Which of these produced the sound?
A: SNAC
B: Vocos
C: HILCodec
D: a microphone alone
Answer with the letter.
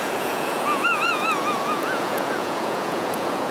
B